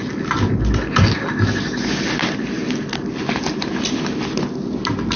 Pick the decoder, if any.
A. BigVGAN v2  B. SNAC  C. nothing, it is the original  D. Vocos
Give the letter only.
C